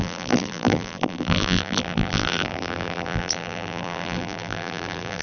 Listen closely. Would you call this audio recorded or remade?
remade